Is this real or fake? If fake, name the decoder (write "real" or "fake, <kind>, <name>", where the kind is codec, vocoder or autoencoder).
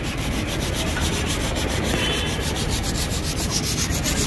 real